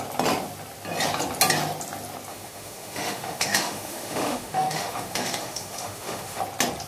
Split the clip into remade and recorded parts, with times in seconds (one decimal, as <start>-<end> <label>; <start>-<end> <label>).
0.0-2.3 recorded; 2.3-6.4 remade; 6.4-6.9 recorded